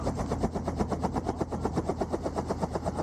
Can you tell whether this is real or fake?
real